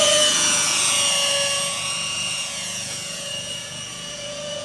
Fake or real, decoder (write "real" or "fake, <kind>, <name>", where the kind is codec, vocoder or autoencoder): fake, vocoder, Vocos